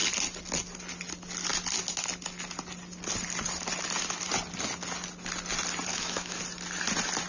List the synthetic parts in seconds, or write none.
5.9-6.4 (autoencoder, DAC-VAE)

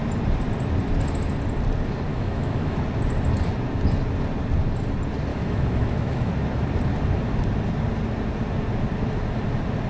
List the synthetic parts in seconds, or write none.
2.1-2.8 (autoencoder, DAC-VAE); 5.3-6.3

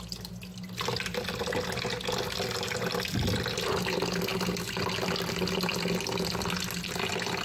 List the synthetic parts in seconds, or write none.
none

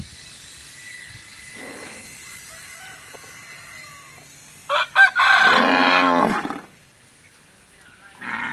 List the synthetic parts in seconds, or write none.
none

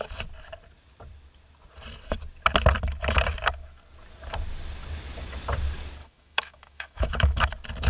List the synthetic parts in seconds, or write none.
6.0-7.5 (autoencoder, DAC-VAE)